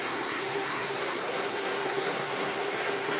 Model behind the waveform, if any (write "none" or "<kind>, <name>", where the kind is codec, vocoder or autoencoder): codec, SNAC